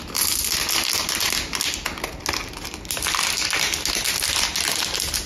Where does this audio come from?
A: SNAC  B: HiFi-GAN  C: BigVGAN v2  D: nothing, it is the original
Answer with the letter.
D